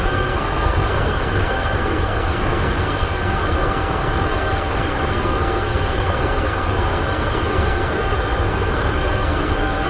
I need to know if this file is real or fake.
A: fake